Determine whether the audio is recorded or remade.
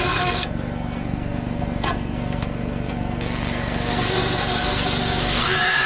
remade